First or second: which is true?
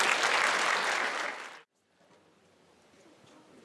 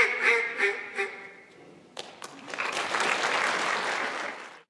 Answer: first